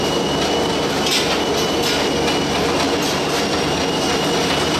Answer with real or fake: real